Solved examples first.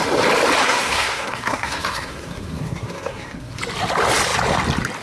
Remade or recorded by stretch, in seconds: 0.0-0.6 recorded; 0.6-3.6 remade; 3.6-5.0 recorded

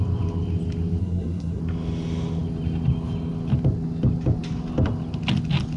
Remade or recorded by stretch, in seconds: 0.0-1.0 recorded; 1.0-1.6 remade; 1.6-5.8 recorded